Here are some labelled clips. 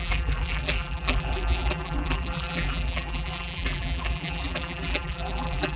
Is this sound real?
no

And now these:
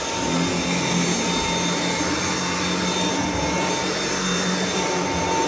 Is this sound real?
yes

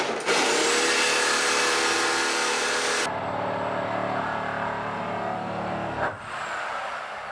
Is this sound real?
yes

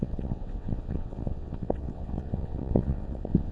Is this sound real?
no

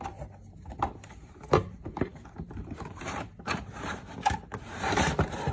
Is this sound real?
no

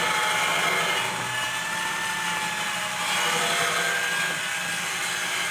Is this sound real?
yes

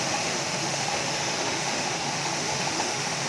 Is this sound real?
no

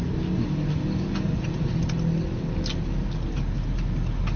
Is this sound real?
yes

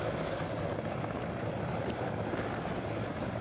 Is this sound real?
yes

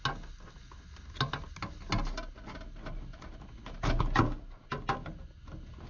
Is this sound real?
yes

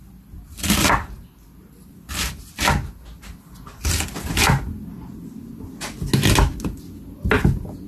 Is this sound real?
yes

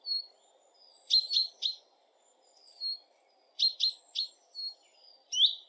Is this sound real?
yes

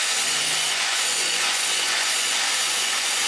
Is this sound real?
no